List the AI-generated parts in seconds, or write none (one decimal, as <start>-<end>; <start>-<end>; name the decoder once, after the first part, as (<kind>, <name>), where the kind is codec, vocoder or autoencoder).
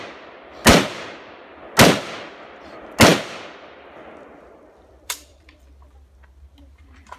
3.1-5.6 (vocoder, BigVGAN v2)